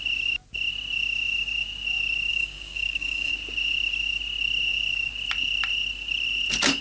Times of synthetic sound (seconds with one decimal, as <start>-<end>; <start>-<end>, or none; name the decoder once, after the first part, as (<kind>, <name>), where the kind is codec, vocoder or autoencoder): 2.3-3.3 (codec, DAC)